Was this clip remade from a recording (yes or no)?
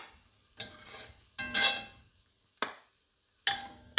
no